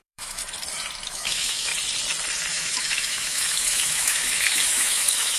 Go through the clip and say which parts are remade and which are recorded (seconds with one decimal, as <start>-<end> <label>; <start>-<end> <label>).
0.0-0.4 remade; 0.4-1.1 recorded; 1.1-1.7 remade; 1.7-2.5 recorded; 2.5-5.4 remade